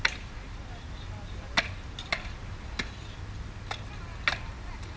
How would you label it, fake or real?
real